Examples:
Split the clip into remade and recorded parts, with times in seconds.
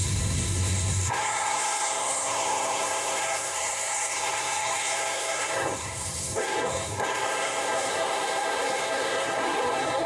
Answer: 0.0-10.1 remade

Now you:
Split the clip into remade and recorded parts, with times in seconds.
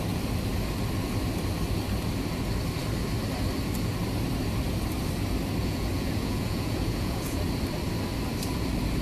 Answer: 0.0-5.6 recorded; 5.6-7.4 remade; 7.4-9.0 recorded